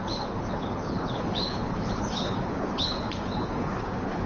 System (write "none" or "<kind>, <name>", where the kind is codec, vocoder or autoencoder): codec, HILCodec